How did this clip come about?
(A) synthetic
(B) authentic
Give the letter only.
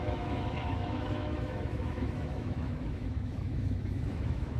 A